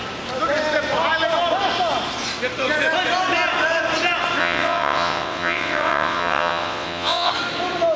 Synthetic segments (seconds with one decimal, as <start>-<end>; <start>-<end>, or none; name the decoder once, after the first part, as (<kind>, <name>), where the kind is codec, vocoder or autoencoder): 4.4-7.3 (vocoder, WaveNeXt)